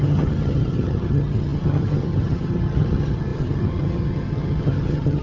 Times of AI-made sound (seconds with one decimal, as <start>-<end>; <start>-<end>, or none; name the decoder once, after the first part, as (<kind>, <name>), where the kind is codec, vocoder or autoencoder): 0.0-5.2 (vocoder, HiFi-GAN)

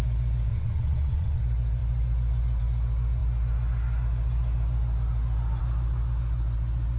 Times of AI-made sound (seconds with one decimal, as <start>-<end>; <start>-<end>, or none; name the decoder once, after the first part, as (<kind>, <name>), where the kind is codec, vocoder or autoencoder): 0.5-1.4 (vocoder, WaveNeXt)